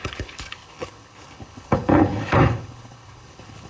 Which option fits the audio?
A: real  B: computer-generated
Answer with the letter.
B